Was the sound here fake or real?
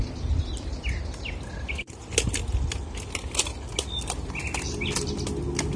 real